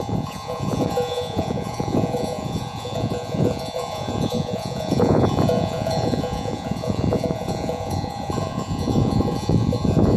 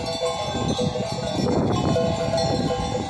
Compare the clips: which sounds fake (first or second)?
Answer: first